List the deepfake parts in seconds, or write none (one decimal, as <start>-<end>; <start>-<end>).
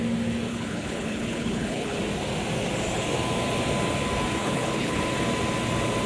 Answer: 0.5-2.0; 4.4-5.0